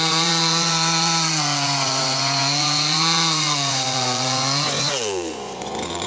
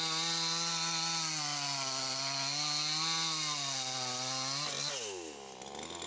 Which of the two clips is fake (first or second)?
first